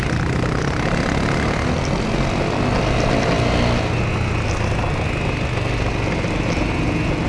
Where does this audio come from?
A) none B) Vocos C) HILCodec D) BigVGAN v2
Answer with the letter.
A